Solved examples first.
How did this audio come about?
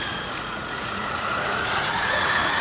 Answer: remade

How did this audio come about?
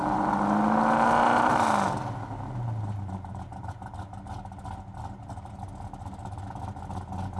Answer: recorded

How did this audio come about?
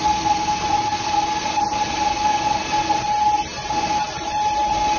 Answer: recorded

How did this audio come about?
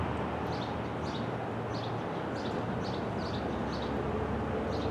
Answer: recorded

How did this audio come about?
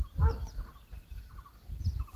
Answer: recorded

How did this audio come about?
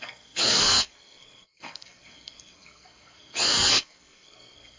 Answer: remade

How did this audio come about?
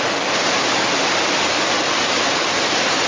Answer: recorded